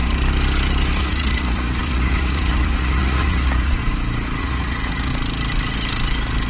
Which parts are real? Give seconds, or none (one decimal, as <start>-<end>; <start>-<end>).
0.0-1.0; 3.8-4.4; 5.1-6.5

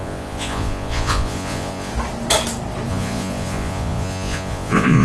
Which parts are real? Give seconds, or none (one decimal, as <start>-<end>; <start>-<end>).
1.9-2.9